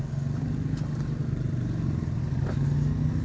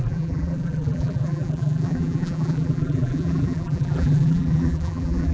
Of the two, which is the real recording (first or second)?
first